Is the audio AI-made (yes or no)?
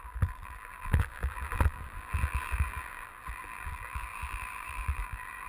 yes